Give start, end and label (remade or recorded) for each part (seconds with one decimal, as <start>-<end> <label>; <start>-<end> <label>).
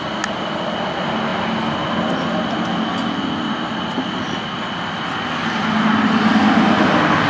0.0-7.3 recorded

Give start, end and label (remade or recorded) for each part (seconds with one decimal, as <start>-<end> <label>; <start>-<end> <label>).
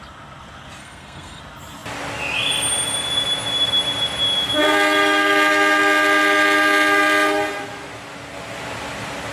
0.0-0.8 recorded; 0.8-1.4 remade; 1.4-9.3 recorded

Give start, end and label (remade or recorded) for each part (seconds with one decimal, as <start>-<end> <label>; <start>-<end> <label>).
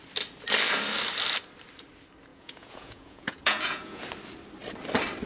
0.0-2.3 recorded; 2.3-4.0 remade; 4.0-5.3 recorded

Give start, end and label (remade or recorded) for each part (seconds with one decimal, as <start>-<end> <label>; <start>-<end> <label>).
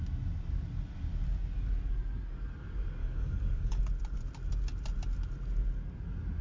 0.0-3.0 recorded; 3.0-3.8 remade; 3.8-6.4 recorded